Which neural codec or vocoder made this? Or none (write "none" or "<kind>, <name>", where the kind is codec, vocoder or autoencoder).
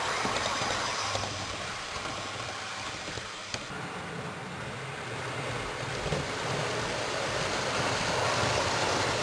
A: vocoder, BigVGAN v2